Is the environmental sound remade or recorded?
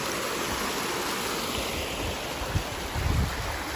recorded